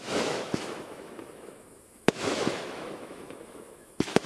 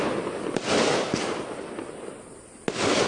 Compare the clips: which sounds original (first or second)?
second